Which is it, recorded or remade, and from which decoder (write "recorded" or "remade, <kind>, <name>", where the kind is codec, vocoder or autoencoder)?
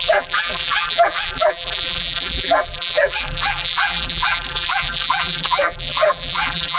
remade, vocoder, BigVGAN v2